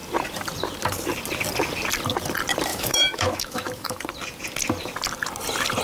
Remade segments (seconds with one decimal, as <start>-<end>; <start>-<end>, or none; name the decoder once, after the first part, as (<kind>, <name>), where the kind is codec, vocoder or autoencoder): 2.7-4.0 (autoencoder, DAC-VAE)